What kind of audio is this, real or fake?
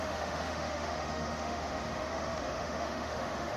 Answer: fake